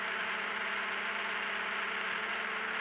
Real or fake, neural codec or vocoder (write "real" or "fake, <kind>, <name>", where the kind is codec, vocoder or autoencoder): real